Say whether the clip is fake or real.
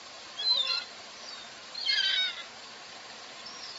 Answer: real